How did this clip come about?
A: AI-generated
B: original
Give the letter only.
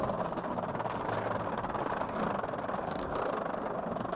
B